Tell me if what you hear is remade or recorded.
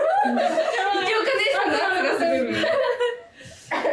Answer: recorded